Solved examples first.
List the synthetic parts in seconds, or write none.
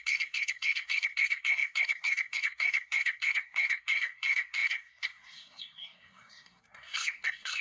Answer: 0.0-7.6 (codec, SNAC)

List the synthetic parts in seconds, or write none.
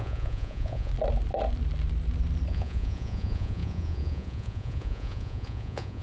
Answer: 0.0-0.9 (vocoder, Vocos); 2.5-6.0